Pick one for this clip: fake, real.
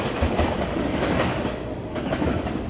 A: fake